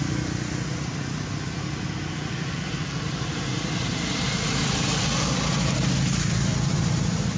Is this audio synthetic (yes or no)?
no